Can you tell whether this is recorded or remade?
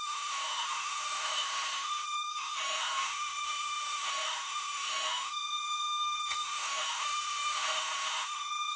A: remade